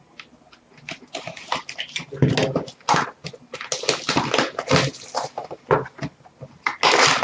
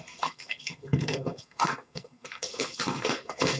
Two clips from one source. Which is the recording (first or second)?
first